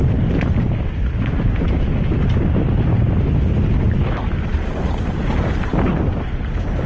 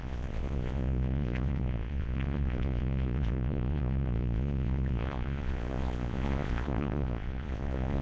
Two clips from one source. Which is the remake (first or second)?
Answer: second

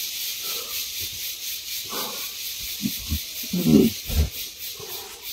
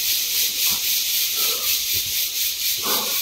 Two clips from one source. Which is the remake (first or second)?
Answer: second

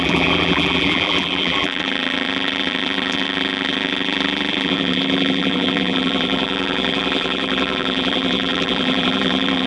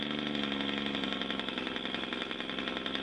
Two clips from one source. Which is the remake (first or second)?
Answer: first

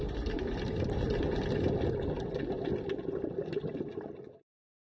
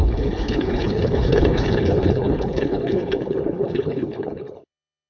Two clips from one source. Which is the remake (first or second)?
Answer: second